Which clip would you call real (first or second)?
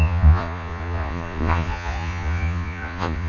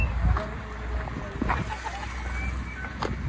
second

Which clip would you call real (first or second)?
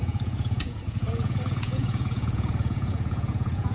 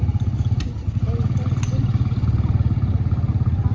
second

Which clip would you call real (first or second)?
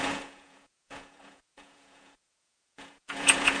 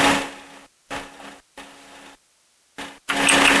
second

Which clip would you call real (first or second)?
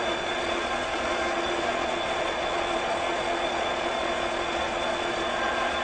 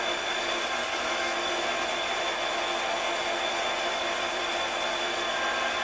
second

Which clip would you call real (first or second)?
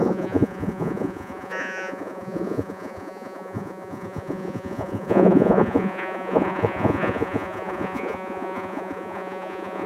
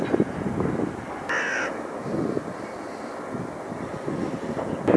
second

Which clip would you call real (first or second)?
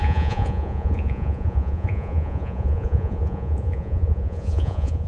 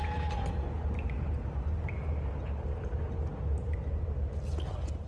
second